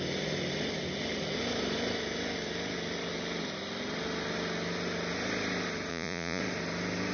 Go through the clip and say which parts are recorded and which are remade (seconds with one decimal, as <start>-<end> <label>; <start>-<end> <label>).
0.0-5.9 recorded; 5.9-6.4 remade; 6.4-7.1 recorded